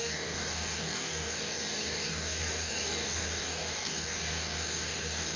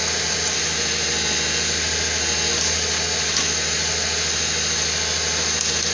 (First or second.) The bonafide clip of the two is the second